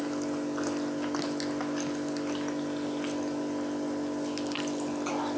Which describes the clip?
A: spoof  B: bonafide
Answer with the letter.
B